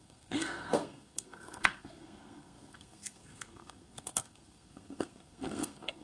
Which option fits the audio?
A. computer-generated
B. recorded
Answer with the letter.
A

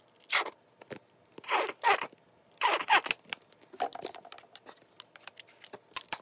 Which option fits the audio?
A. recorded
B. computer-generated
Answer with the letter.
A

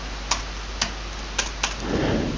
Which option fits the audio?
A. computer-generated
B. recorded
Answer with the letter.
B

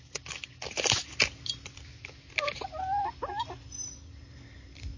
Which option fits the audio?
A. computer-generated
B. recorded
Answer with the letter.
B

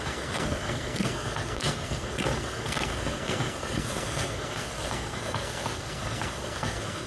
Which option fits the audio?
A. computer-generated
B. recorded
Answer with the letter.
A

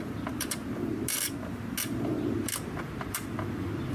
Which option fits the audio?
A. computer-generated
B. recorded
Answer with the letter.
B